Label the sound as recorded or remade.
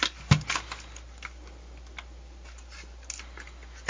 recorded